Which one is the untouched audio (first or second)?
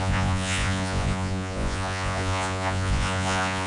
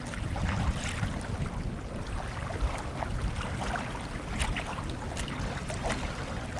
second